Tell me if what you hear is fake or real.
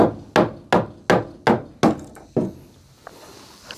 real